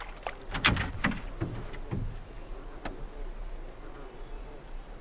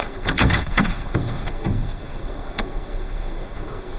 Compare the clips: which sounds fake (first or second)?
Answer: second